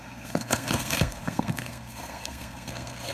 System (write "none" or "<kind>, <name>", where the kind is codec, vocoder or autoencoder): codec, SNAC